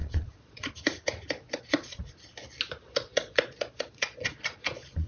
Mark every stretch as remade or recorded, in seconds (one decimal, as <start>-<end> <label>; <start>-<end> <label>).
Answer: 0.0-0.7 remade; 0.7-1.4 recorded; 1.4-2.0 remade; 2.0-2.9 recorded; 2.9-5.1 remade